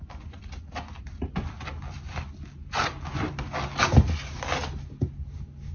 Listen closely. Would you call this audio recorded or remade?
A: recorded